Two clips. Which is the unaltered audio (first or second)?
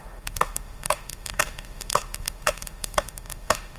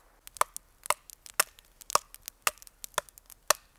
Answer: second